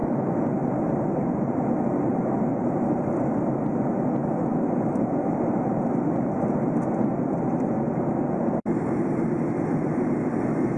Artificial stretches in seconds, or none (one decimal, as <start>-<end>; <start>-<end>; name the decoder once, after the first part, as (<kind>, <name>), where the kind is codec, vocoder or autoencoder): 4.2-4.7 (autoencoder, DAC-VAE)